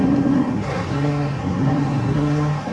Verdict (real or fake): fake